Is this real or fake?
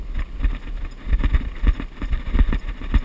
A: real